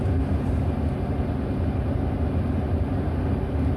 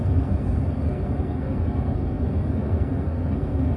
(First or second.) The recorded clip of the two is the first